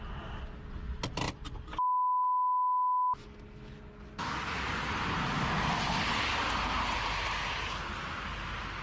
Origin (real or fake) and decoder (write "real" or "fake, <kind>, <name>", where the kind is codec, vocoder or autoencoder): real